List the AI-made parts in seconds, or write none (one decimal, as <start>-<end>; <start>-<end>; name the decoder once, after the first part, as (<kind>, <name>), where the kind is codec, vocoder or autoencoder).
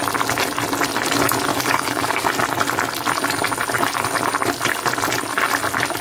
1.5-2.3 (codec, DAC)